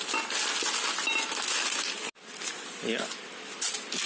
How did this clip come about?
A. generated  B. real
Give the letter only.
B